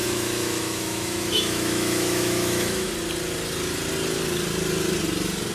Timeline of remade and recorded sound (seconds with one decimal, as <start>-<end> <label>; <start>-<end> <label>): 0.0-2.9 remade; 2.9-5.5 recorded